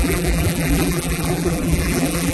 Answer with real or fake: fake